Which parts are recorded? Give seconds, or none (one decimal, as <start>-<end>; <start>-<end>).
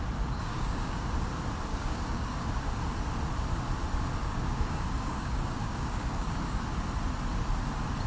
0.0-0.5; 1.1-1.7; 2.5-4.2; 6.6-8.1